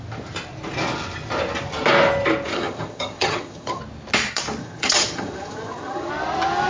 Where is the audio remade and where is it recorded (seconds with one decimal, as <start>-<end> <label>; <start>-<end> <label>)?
0.0-2.5 recorded; 2.5-3.8 remade; 3.8-4.6 recorded; 4.6-6.1 remade; 6.1-6.7 recorded